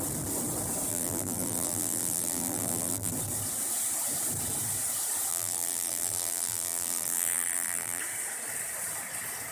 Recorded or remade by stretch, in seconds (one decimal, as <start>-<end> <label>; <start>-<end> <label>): 0.0-0.9 recorded; 0.9-3.1 remade; 3.1-5.3 recorded; 5.3-8.0 remade; 8.0-9.5 recorded